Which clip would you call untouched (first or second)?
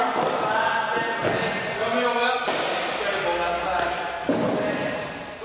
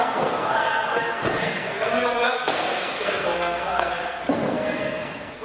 first